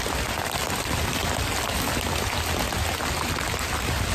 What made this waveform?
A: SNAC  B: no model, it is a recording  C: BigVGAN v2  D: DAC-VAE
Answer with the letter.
B